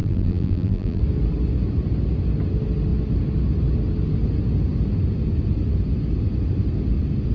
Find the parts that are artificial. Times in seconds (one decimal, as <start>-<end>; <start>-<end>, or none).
0.0-1.0